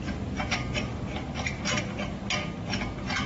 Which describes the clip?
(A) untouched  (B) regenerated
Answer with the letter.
A